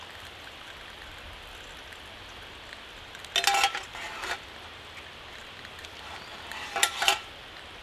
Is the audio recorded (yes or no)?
yes